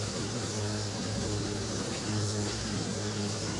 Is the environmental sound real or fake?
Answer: fake